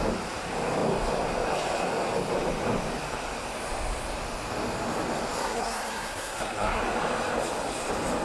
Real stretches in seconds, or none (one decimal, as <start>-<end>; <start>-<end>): 0.0-5.4; 6.8-8.2